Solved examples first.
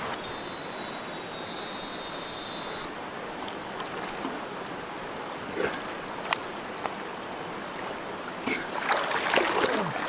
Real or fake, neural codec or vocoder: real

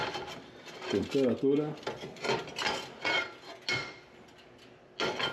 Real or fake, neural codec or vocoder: real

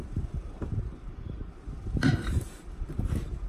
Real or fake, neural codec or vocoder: fake, vocoder, BigVGAN v2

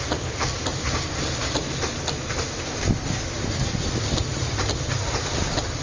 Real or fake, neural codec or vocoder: real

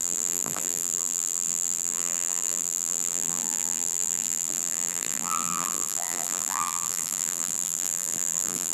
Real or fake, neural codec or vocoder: fake, vocoder, BigVGAN v2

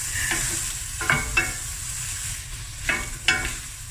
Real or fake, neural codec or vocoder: real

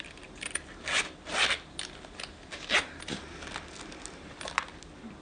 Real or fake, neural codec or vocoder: real